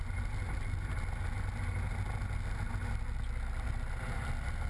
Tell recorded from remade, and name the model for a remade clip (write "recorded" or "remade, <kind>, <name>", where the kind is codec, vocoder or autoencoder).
recorded